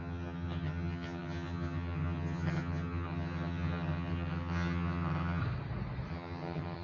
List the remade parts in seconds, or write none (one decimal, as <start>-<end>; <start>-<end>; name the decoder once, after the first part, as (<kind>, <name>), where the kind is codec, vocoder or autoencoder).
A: 0.0-5.4 (vocoder, HiFi-GAN); 6.1-6.8